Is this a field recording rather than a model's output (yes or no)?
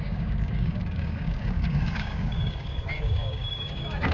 no